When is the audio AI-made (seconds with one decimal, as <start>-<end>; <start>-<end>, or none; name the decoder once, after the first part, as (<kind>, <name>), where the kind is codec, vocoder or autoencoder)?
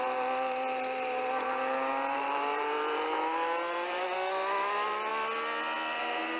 0.0-5.1 (vocoder, BigVGAN v2); 6.0-6.4